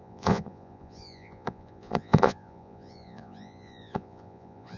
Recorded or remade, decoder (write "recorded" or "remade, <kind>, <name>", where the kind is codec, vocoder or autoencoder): remade, vocoder, Vocos